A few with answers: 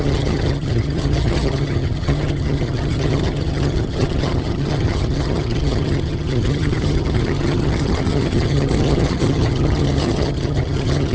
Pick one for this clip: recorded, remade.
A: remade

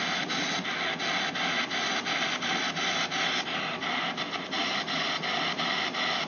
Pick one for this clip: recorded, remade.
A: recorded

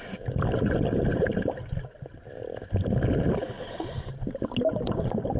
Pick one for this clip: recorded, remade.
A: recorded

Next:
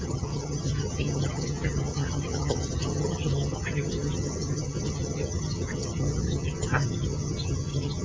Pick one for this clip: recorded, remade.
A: remade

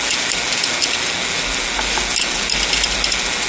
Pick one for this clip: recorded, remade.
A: recorded